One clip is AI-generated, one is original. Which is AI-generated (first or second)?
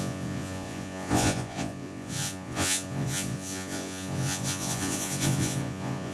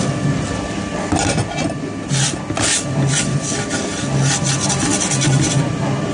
first